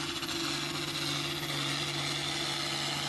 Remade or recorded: recorded